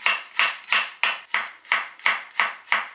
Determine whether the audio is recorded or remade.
recorded